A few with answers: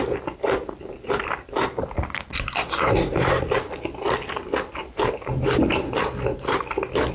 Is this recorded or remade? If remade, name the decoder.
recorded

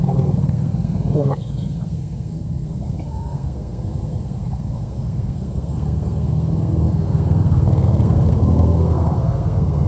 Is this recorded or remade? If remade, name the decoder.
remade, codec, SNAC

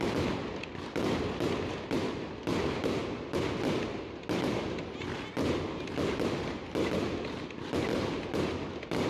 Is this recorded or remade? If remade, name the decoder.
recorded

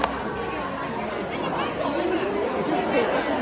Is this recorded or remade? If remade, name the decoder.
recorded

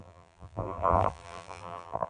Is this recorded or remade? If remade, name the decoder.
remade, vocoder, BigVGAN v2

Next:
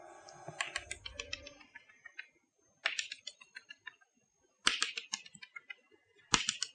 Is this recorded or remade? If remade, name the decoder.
recorded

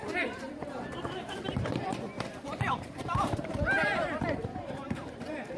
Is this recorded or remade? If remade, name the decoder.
remade, vocoder, BigVGAN v2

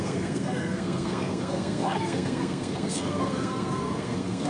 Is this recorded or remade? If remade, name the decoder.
remade, codec, SNAC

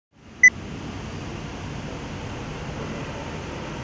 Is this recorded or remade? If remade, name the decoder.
recorded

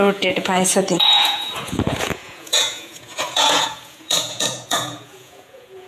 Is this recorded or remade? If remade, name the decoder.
remade, vocoder, Vocos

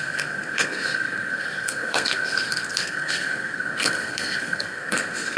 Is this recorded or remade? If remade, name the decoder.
remade, codec, SNAC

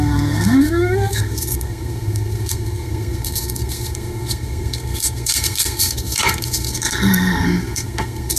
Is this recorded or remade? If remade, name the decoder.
remade, codec, SNAC